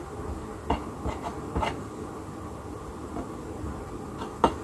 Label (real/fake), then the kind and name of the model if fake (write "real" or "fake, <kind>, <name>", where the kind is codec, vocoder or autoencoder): real